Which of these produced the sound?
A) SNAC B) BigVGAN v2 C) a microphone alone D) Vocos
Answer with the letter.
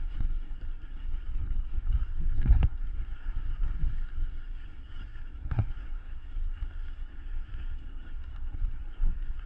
A